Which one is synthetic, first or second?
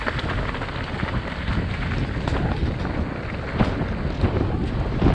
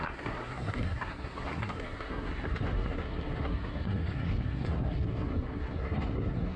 second